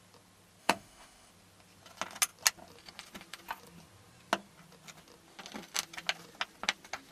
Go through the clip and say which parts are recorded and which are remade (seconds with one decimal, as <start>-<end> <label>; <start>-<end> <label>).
0.0-0.6 recorded; 0.6-1.3 remade; 1.3-7.1 recorded